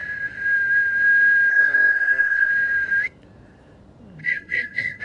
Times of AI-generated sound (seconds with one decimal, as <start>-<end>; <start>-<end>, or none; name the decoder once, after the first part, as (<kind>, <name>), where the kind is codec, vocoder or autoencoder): 1.5-2.5 (codec, SNAC); 4.2-5.0